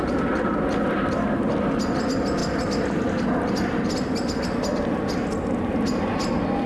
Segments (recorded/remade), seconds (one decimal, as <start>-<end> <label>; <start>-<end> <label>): 0.0-6.7 recorded

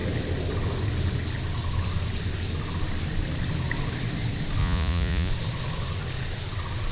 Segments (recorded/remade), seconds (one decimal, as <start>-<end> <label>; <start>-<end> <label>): 0.0-4.6 recorded; 4.6-5.3 remade; 5.3-6.9 recorded